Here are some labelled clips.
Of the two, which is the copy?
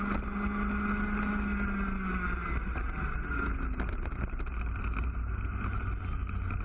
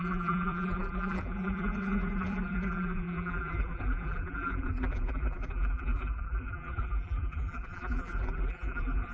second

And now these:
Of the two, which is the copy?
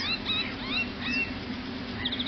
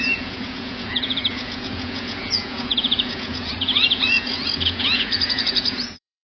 second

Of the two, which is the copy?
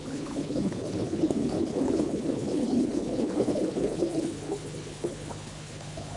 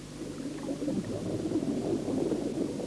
first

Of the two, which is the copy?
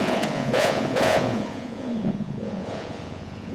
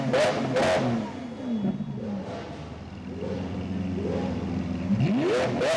first